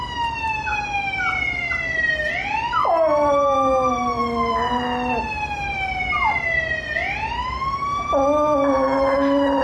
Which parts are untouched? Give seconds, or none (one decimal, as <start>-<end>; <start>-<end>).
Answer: 0.0-9.6